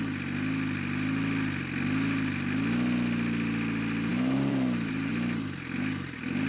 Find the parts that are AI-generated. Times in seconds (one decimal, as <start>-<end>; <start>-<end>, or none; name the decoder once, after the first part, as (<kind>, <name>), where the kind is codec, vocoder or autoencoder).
4.1-5.1 (vocoder, BigVGAN v2)